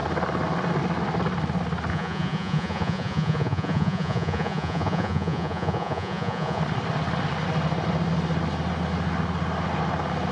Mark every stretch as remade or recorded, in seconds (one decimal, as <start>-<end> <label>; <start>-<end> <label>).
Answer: 0.0-1.9 recorded; 1.9-6.6 remade; 6.6-10.3 recorded